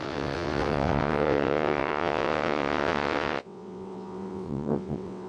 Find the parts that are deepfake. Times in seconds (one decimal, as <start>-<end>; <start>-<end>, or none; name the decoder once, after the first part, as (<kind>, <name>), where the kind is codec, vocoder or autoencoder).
0.0-5.3 (vocoder, WaveNeXt)